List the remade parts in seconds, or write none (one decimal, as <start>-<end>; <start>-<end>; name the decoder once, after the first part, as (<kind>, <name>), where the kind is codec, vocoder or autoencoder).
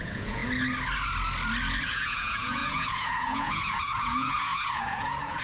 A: 0.0-0.4 (vocoder, Vocos); 1.8-5.4